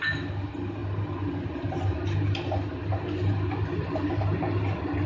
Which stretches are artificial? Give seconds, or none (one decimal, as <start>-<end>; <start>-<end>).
none